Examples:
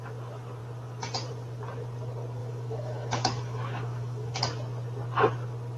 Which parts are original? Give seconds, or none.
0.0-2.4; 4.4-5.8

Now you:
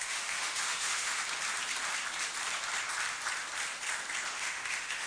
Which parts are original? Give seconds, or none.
1.2-4.3

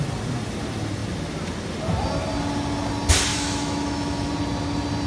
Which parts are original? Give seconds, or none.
0.0-3.3; 4.3-5.1